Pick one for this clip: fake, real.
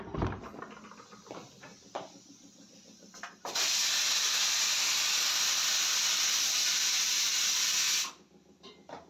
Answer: real